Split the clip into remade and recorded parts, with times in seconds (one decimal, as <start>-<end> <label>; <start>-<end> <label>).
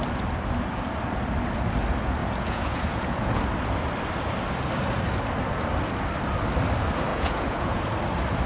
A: 0.0-2.2 recorded; 2.2-3.4 remade; 3.4-7.1 recorded; 7.1-7.8 remade; 7.8-8.5 recorded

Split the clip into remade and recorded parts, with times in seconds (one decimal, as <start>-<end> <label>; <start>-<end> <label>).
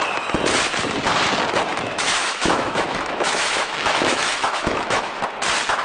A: 0.0-1.7 recorded; 1.7-5.2 remade; 5.2-5.8 recorded